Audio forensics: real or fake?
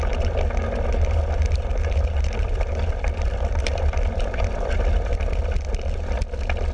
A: real